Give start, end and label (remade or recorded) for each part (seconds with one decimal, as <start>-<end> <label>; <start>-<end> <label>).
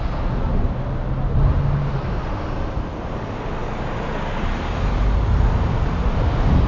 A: 0.0-6.7 recorded